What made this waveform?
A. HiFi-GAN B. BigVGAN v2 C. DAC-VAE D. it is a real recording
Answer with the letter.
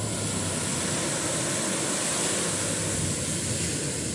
D